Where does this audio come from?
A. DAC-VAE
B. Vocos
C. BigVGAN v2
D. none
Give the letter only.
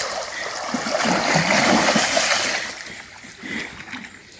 D